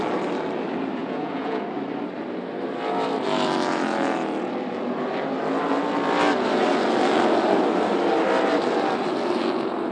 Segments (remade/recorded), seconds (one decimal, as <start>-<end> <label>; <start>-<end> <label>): 0.0-1.0 recorded; 1.0-1.6 remade; 1.6-9.9 recorded